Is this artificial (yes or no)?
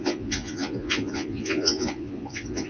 yes